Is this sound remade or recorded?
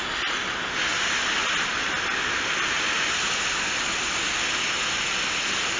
recorded